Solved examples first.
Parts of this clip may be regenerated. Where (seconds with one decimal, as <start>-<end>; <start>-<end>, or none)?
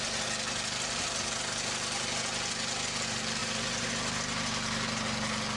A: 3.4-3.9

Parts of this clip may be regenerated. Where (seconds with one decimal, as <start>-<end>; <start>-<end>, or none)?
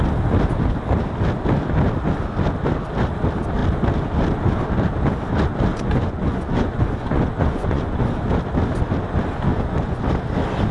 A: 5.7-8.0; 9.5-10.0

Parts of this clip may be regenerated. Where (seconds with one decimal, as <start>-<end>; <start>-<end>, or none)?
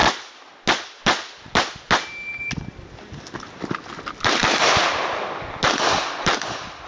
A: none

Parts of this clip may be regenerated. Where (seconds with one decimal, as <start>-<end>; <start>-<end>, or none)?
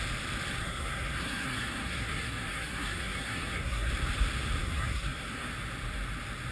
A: 0.6-3.9; 4.6-5.5